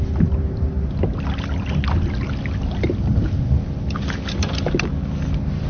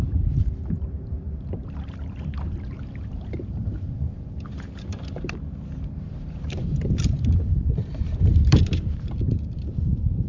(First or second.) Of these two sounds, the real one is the first